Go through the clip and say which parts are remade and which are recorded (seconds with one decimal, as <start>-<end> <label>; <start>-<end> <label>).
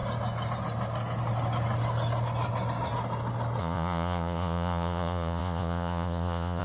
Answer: 0.0-3.6 recorded; 3.6-6.6 remade